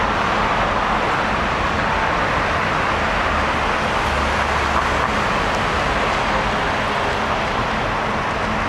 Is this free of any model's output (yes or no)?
yes